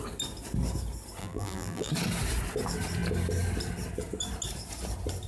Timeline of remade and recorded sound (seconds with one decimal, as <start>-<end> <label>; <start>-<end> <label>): 0.0-1.2 recorded; 1.2-1.9 remade; 1.9-5.3 recorded